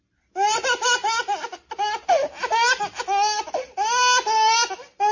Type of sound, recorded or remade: recorded